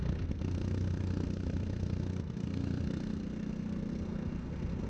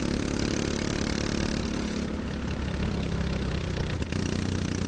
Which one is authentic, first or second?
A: second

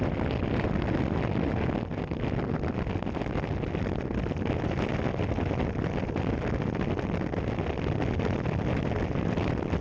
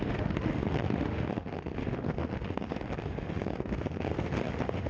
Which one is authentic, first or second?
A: first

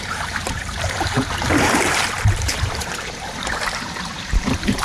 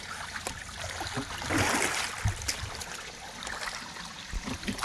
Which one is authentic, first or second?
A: second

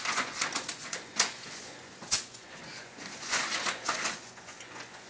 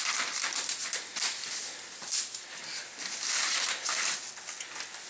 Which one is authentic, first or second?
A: second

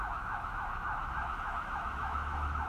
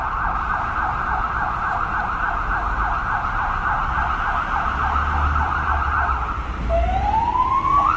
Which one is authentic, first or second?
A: second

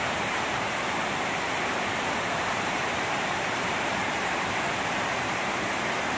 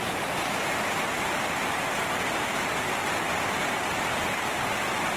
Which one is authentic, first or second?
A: second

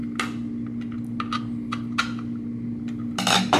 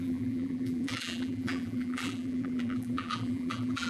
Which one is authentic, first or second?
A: first